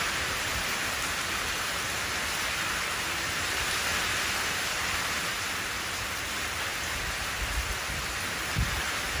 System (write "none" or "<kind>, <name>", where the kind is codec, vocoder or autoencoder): none